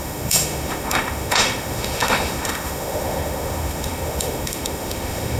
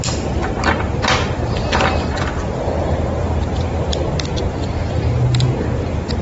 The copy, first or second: first